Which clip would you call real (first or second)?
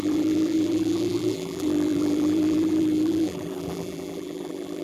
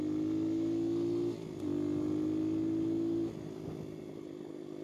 second